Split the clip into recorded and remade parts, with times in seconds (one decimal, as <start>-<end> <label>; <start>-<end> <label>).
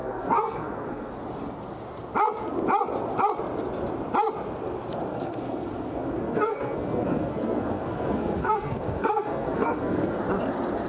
0.0-1.1 remade; 1.1-5.1 recorded; 5.1-10.2 remade; 10.2-10.9 recorded